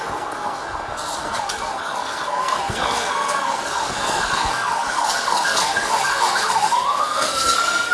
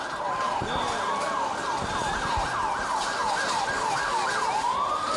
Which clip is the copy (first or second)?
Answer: first